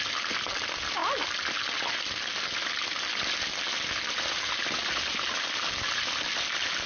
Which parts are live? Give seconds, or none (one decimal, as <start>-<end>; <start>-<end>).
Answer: 0.0-6.9